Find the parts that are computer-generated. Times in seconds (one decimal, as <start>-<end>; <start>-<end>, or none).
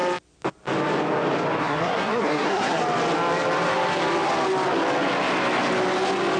1.6-2.8